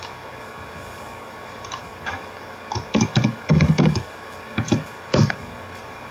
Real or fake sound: fake